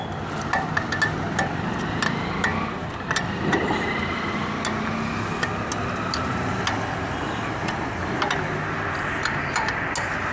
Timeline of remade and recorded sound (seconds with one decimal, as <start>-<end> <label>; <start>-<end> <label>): 0.0-10.3 recorded

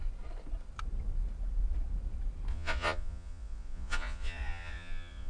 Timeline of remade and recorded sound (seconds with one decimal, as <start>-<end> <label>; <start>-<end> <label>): 0.0-2.5 recorded; 2.5-5.3 remade

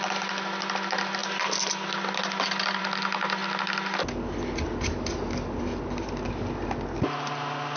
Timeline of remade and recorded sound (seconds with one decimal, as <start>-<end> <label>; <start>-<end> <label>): 0.0-7.8 recorded

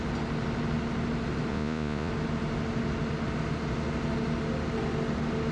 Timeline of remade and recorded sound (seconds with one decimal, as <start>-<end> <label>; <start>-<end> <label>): 0.0-1.5 recorded; 1.5-2.1 remade; 2.1-5.5 recorded

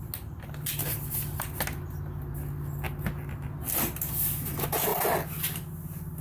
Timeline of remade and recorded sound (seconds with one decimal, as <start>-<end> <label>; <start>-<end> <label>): 0.0-6.2 recorded

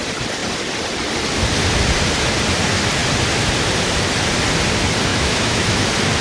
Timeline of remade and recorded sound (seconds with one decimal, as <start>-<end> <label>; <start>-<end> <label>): 0.0-5.1 recorded; 5.1-5.8 remade; 5.8-6.2 recorded

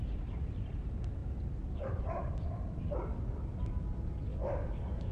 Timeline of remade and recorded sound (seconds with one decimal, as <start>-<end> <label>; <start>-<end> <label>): 0.0-4.3 recorded; 4.3-5.1 remade

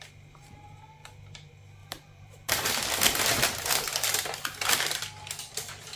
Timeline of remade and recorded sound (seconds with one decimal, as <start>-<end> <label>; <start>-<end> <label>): 0.0-1.8 recorded; 1.8-2.7 remade; 2.7-6.0 recorded